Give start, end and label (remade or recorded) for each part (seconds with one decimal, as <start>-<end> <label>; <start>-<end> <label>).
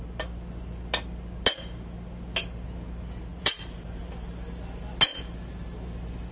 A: 0.0-3.3 recorded; 3.3-4.0 remade; 4.0-6.3 recorded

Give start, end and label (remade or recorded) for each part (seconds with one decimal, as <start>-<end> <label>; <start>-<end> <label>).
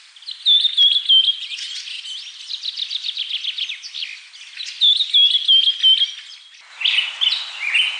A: 0.0-8.0 recorded